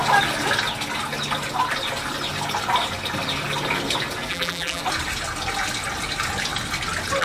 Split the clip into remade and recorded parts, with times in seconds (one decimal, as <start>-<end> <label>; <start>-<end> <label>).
0.0-4.3 recorded; 4.3-4.8 remade; 4.8-7.2 recorded